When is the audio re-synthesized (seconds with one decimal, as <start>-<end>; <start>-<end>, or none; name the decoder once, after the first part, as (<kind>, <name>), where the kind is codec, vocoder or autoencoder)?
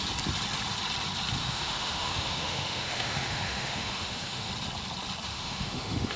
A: 1.4-4.5 (autoencoder, DAC-VAE); 5.3-6.2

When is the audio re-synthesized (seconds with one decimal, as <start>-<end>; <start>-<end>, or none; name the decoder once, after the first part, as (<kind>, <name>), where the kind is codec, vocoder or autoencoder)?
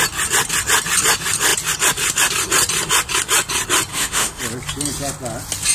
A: 3.9-4.4 (autoencoder, DAC-VAE)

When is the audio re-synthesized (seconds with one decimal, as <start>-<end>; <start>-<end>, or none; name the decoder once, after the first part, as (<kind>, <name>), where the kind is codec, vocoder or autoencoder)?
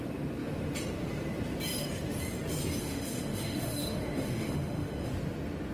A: 2.8-5.1 (autoencoder, DAC-VAE)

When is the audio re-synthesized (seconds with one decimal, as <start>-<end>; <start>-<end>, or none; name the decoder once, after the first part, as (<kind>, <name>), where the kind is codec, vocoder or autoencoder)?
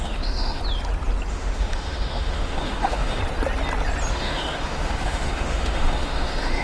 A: 0.0-0.6 (autoencoder, DAC-VAE); 1.3-3.2; 4.1-6.6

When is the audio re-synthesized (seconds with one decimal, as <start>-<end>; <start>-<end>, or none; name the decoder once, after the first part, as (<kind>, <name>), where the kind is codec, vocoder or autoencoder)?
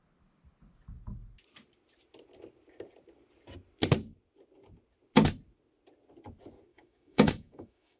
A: 6.7-8.0 (autoencoder, DAC-VAE)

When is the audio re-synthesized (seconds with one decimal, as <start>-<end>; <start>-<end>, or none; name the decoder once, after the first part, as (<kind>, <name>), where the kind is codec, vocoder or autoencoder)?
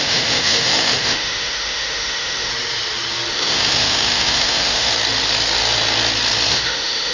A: 0.0-2.5 (autoencoder, DAC-VAE); 3.3-4.9; 6.5-7.1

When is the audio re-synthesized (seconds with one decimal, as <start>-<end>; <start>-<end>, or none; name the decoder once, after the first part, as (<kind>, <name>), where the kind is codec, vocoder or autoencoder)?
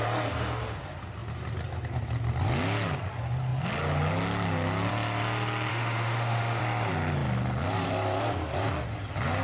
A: 5.7-6.6 (autoencoder, DAC-VAE)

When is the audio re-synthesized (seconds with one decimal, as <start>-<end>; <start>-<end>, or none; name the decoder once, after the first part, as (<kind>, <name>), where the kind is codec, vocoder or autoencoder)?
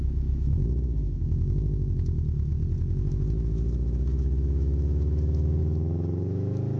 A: 0.0-2.5 (autoencoder, DAC-VAE); 3.1-6.8